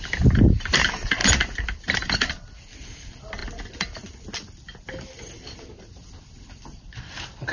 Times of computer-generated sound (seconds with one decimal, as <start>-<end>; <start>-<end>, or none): 1.2-2.3